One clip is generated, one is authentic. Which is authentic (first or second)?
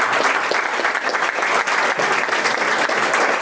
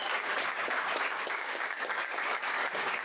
first